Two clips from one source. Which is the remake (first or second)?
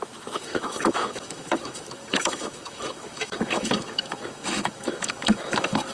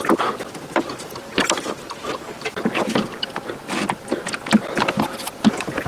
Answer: first